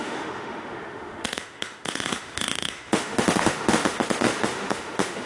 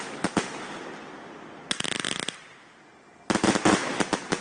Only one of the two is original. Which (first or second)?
second